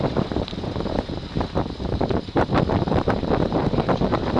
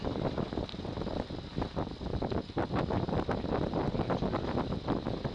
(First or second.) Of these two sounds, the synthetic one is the first